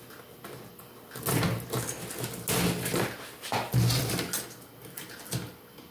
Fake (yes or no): no